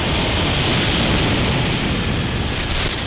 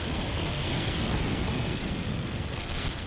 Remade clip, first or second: second